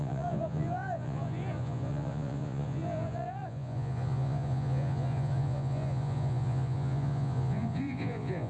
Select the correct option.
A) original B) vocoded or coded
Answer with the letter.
B